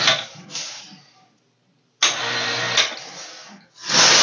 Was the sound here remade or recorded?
recorded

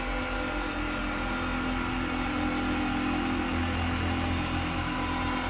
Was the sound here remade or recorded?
recorded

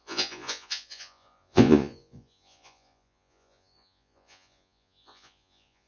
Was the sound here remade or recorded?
remade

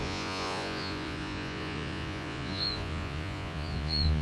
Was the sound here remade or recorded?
remade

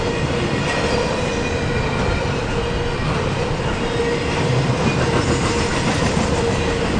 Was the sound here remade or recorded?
recorded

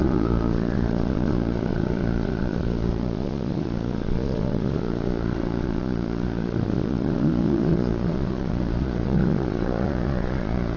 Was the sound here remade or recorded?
remade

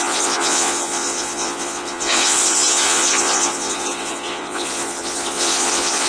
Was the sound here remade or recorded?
remade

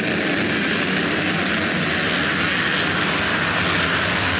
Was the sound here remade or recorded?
recorded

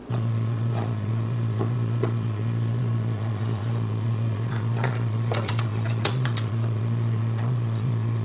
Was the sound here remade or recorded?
remade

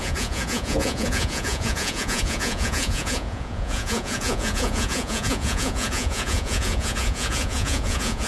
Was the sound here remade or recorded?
remade